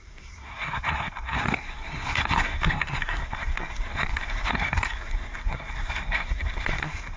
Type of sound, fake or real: fake